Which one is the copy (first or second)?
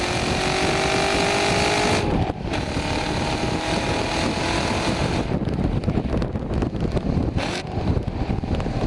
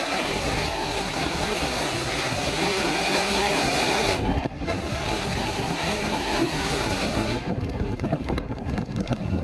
second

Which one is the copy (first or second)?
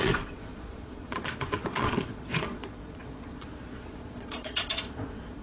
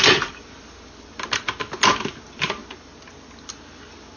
first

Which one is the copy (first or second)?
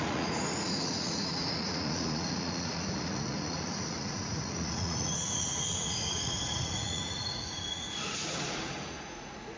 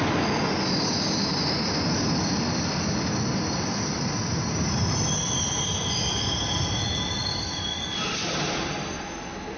first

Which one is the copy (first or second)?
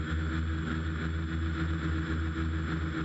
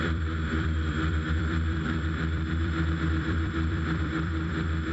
second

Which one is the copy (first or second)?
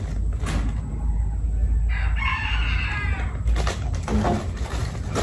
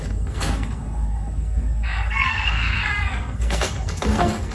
second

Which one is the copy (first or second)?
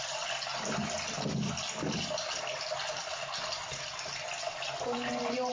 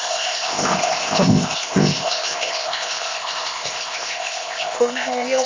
second